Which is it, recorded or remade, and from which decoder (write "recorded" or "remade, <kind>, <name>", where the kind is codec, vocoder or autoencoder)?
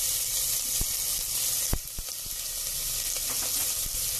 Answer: recorded